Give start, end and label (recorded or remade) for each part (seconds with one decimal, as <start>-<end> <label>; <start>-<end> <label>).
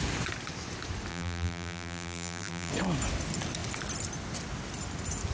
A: 0.0-1.1 recorded; 1.1-2.7 remade; 2.7-5.3 recorded